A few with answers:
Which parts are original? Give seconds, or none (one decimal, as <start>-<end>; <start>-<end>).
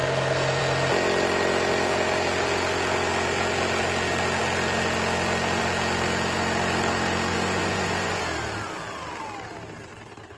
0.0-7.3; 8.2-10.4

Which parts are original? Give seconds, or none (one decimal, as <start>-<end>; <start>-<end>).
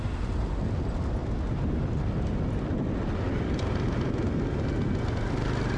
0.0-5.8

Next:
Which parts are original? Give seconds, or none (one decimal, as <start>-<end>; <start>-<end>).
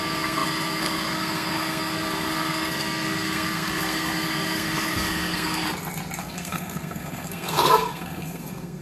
5.6-6.2